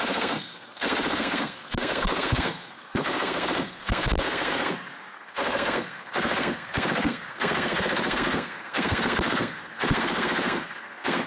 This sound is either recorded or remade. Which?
remade